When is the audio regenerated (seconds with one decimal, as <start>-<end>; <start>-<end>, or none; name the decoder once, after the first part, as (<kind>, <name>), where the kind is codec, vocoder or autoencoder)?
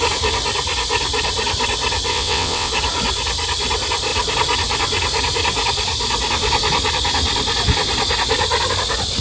2.1-2.7 (vocoder, WaveNeXt)